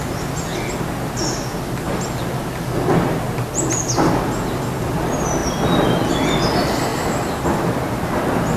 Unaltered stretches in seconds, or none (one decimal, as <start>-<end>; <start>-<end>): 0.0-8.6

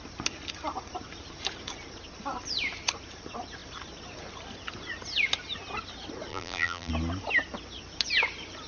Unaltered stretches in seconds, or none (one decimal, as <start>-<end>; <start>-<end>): 0.0-6.3; 6.9-8.7

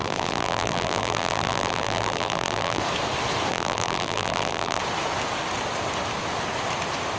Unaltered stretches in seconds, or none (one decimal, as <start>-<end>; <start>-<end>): 2.8-3.5; 4.8-7.2